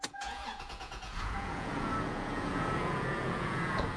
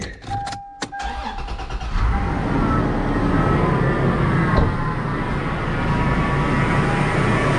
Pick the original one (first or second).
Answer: second